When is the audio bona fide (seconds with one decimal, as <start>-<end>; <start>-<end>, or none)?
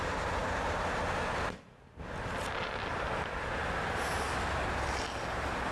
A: 0.0-5.7